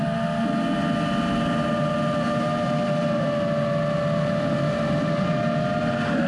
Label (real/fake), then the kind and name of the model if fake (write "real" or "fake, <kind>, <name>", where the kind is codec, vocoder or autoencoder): real